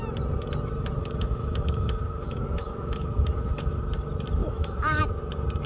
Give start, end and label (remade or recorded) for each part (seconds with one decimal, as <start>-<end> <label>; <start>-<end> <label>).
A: 0.0-1.0 recorded; 1.0-3.9 remade; 3.9-4.4 recorded; 4.4-5.0 remade; 5.0-5.7 recorded